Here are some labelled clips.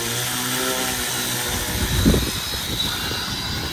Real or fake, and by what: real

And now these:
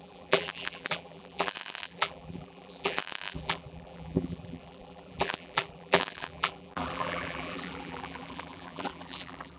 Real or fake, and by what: fake, vocoder, BigVGAN v2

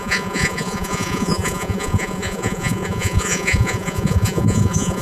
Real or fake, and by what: fake, vocoder, Vocos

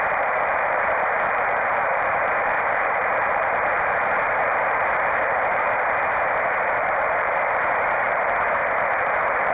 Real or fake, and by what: fake, vocoder, BigVGAN v2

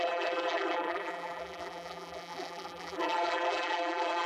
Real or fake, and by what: fake, vocoder, BigVGAN v2